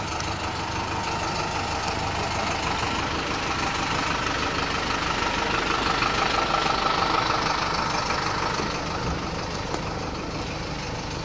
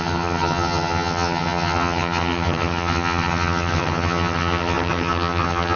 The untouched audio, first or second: first